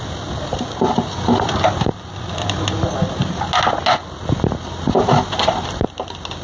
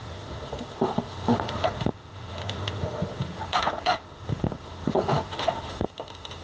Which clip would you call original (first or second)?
first